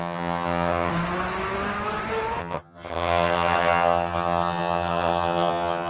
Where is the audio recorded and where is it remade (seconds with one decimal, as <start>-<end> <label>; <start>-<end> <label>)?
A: 0.0-0.9 remade; 0.9-2.4 recorded; 2.4-5.9 remade